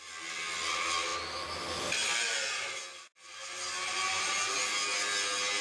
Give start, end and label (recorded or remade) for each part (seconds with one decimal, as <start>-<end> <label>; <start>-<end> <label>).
0.0-5.6 recorded